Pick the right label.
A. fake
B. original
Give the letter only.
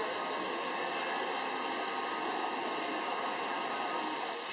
B